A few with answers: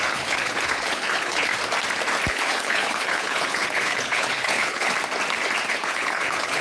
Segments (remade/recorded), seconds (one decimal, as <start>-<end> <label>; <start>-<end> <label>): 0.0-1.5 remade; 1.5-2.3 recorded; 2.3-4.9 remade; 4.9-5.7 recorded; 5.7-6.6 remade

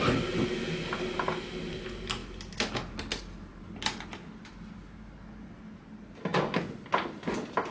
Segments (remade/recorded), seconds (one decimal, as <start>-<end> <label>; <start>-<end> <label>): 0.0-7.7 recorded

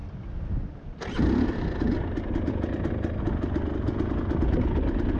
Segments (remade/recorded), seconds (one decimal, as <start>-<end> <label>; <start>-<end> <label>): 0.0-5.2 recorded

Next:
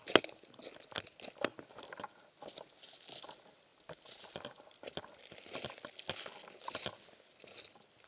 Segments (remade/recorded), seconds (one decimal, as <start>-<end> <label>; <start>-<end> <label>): 0.0-8.1 recorded

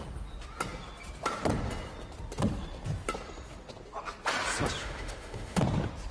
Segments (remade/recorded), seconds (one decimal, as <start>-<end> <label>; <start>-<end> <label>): 0.0-4.8 recorded; 4.8-5.6 remade; 5.6-6.1 recorded

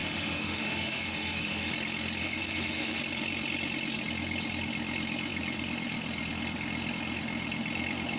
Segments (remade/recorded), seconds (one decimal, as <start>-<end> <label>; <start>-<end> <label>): 0.0-1.7 remade; 1.7-2.2 recorded; 2.2-3.0 remade; 3.0-8.2 recorded